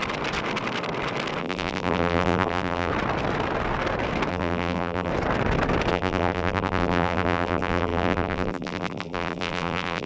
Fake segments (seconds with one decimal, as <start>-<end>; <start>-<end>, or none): 1.4-2.9; 4.3-5.1; 5.9-10.1